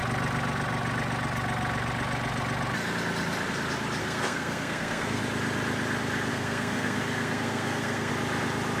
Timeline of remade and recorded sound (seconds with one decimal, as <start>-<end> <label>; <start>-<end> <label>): 0.0-4.0 recorded; 4.0-5.2 remade; 5.2-6.3 recorded; 6.3-8.1 remade; 8.1-8.8 recorded